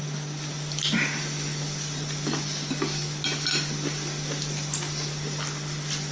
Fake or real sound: real